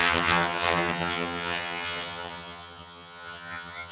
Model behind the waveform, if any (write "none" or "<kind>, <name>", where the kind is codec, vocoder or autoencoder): vocoder, HiFi-GAN